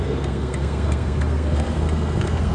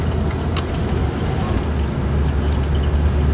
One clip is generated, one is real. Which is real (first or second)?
second